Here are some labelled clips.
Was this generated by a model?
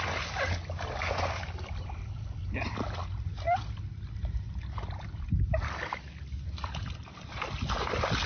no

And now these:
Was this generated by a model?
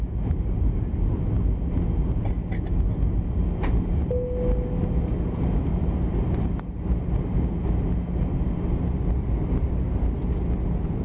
no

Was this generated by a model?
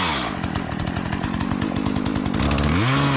no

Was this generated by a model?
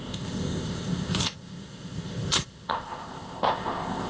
yes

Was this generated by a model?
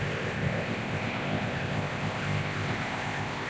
yes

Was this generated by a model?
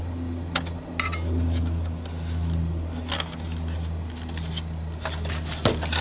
no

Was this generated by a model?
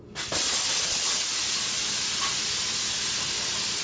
no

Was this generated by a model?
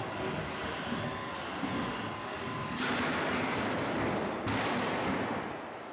no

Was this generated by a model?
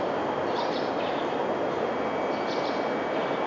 no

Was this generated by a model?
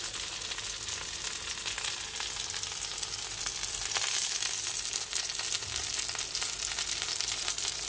no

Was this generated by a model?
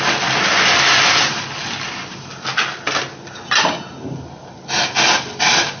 no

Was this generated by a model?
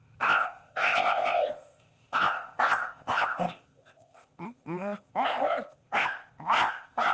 yes